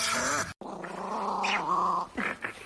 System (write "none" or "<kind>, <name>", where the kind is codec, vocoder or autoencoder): none